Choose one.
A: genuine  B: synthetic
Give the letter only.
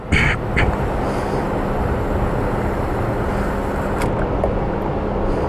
A